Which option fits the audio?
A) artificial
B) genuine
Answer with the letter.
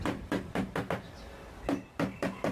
B